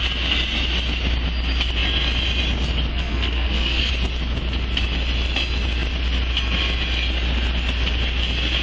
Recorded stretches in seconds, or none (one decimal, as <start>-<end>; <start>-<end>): 0.0-2.9; 3.9-8.6